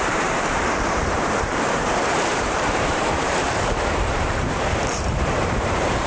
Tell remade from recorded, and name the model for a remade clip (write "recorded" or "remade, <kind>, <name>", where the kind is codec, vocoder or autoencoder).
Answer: remade, vocoder, BigVGAN v2